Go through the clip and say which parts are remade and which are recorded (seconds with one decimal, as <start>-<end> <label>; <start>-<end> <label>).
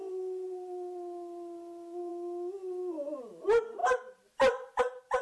0.0-5.2 recorded